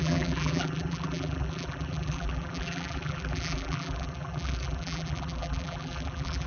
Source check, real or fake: fake